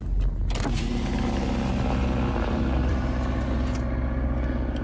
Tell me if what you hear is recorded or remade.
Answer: recorded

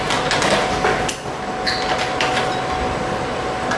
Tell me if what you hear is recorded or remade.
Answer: recorded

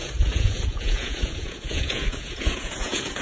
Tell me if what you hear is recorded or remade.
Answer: remade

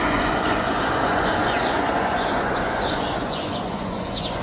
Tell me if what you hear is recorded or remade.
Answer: remade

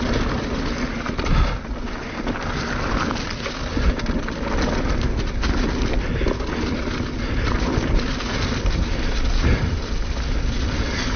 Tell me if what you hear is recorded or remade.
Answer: recorded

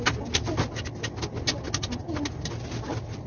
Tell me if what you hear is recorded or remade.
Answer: recorded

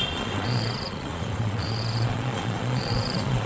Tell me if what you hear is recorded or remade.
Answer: remade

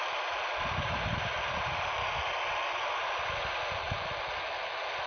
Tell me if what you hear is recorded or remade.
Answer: recorded